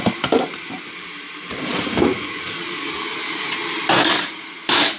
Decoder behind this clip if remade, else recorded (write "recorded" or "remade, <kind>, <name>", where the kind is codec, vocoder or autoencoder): remade, vocoder, BigVGAN v2